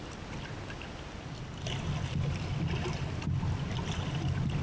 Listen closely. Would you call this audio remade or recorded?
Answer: recorded